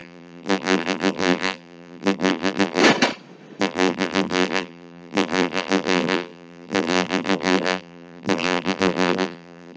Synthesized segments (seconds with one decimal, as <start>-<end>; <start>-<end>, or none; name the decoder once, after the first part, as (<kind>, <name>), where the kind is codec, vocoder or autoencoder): 0.0-2.8 (vocoder, BigVGAN v2); 3.6-9.8